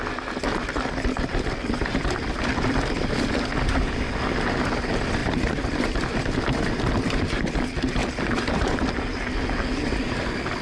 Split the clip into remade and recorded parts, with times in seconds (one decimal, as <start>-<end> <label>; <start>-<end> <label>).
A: 0.0-1.3 recorded; 1.3-3.9 remade; 3.9-5.2 recorded; 5.2-7.3 remade; 7.3-8.0 recorded; 8.0-9.0 remade; 9.0-10.6 recorded